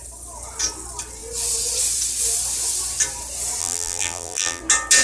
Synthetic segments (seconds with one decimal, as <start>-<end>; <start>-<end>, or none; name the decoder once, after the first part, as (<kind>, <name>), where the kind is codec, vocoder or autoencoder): 3.6-4.6 (vocoder, BigVGAN v2)